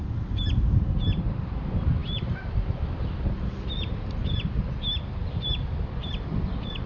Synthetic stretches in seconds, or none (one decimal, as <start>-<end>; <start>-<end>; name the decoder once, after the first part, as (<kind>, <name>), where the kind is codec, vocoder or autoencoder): none